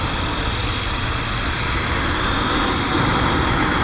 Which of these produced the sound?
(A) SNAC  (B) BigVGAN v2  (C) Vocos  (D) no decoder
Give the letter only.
D